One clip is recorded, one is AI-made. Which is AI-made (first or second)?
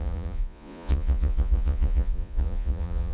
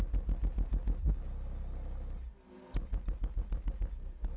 first